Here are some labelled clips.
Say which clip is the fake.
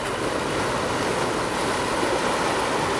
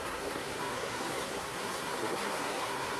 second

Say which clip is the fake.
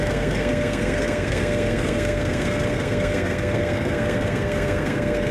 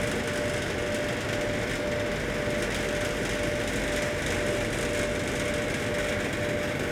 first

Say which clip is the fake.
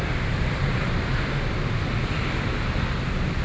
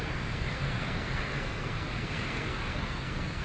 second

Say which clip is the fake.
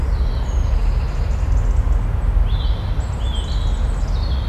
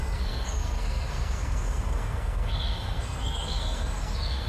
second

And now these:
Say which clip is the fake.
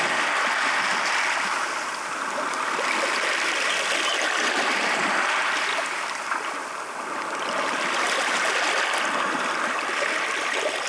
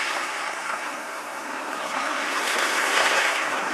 second